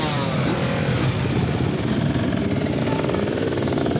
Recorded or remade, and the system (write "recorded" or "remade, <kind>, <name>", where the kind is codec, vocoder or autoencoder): recorded